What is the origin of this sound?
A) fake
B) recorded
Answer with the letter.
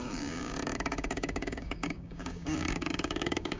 A